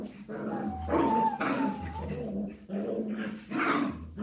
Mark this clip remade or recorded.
recorded